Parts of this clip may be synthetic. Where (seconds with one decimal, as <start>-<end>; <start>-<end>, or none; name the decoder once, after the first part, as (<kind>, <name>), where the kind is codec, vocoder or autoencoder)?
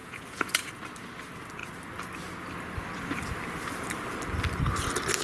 0.0-0.8 (vocoder, Vocos)